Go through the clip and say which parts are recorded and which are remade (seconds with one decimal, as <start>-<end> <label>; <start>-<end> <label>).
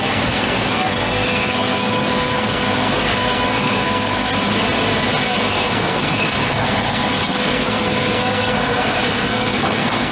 0.0-4.3 remade; 4.3-5.2 recorded; 5.2-10.1 remade